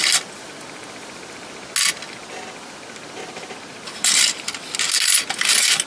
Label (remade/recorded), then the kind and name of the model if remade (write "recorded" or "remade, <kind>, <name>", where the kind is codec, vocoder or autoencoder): recorded